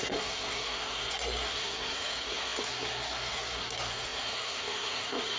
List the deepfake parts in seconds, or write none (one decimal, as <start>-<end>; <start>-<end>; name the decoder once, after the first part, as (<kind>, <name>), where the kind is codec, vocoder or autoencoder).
0.0-5.4 (codec, SNAC)